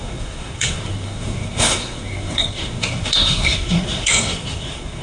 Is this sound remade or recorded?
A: remade